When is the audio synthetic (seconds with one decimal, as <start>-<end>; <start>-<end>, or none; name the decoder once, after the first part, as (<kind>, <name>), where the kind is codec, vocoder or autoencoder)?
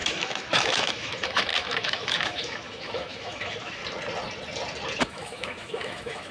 0.0-3.8 (autoencoder, DAC-VAE); 5.0-6.3